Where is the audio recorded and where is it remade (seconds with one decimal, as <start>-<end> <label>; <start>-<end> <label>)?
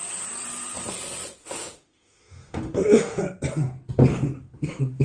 0.0-1.4 recorded; 1.4-3.2 remade; 3.2-4.1 recorded; 4.1-5.0 remade